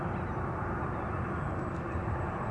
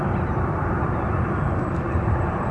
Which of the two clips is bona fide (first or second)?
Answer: first